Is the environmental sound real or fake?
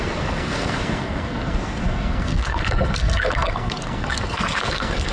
fake